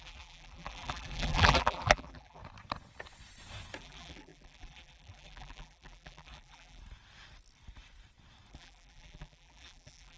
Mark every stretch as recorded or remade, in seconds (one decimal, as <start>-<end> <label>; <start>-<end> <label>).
0.0-2.4 remade; 2.4-3.8 recorded; 3.8-6.8 remade; 6.8-8.5 recorded; 8.5-10.2 remade